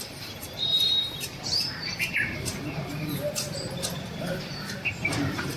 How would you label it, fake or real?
fake